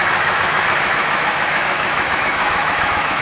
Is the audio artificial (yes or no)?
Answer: yes